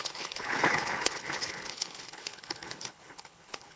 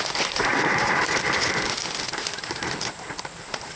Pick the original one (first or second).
second